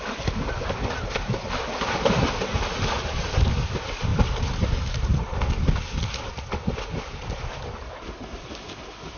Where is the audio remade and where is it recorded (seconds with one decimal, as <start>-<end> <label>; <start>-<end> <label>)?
0.0-9.2 recorded